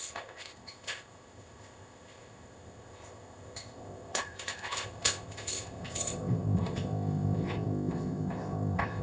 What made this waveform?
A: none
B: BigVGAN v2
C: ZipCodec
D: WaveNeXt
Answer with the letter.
C